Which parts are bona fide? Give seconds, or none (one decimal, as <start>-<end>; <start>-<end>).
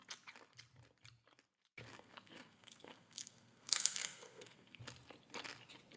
0.0-1.9; 4.8-6.0